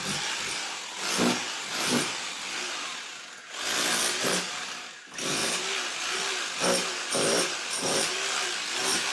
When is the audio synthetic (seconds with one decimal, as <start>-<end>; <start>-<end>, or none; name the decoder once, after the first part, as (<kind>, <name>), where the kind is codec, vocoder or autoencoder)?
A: none